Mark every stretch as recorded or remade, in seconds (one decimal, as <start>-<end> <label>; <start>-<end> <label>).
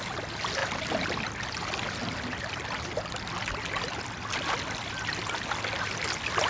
0.0-6.5 recorded